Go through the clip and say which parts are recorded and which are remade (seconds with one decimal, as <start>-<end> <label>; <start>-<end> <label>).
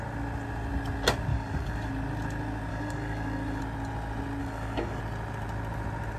0.0-1.3 recorded; 1.3-1.9 remade; 1.9-2.7 recorded; 2.7-3.6 remade; 3.6-4.4 recorded; 4.4-5.0 remade; 5.0-6.2 recorded